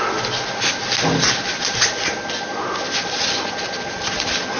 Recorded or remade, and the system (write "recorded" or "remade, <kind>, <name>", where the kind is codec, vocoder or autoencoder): recorded